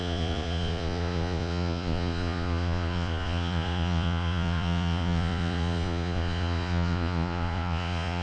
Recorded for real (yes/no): no